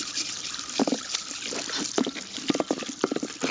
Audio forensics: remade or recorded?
recorded